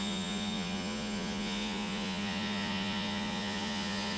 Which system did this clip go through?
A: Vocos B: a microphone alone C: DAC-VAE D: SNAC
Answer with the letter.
A